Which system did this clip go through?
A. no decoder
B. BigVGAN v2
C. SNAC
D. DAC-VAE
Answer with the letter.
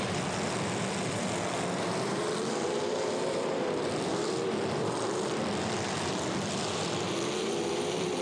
B